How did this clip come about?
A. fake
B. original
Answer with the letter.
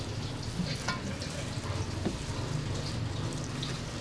B